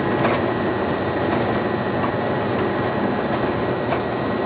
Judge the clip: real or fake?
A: real